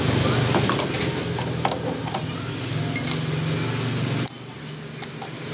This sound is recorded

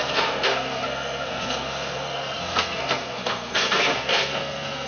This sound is remade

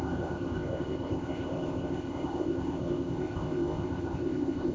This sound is remade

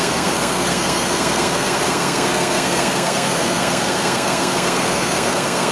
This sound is remade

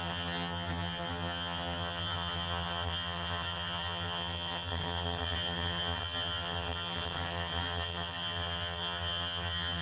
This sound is remade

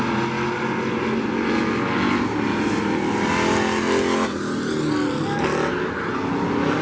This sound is recorded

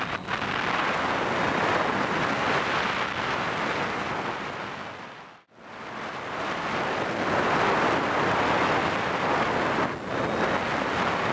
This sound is recorded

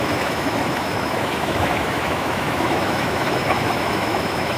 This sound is remade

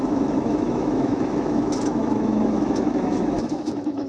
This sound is remade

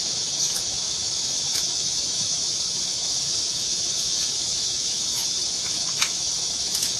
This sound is remade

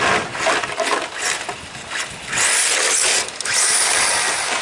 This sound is recorded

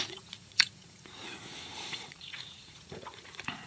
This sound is remade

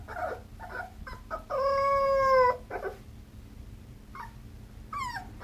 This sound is recorded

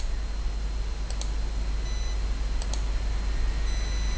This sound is recorded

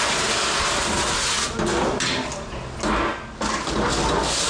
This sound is recorded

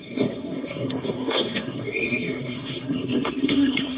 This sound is remade